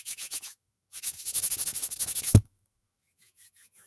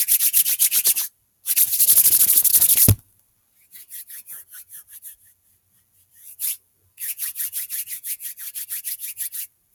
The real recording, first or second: second